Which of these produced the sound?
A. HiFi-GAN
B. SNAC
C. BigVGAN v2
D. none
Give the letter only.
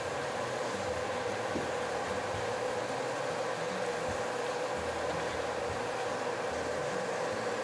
D